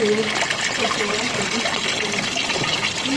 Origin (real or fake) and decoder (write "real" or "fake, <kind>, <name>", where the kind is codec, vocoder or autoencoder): real